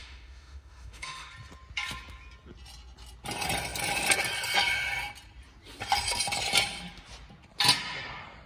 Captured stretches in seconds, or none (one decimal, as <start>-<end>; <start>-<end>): 1.3-8.5